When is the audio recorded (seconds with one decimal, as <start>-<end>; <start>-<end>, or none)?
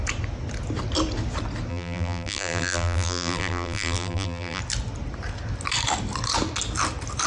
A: 0.0-1.7; 4.6-7.3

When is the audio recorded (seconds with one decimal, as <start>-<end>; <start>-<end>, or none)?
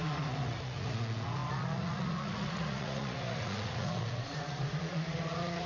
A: none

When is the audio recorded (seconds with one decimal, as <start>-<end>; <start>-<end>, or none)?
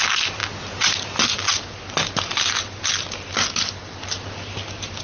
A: 0.0-5.0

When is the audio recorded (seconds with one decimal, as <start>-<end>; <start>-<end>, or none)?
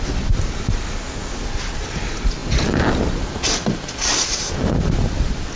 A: 0.0-5.6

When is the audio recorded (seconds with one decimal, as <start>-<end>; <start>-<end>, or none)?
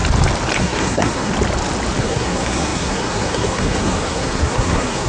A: 0.0-0.6; 1.3-2.0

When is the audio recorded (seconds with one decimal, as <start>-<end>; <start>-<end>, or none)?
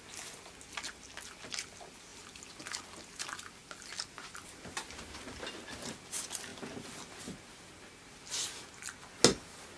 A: 0.0-3.6; 4.4-9.8